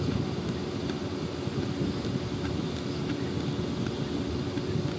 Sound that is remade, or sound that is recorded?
recorded